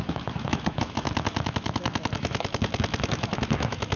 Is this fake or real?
fake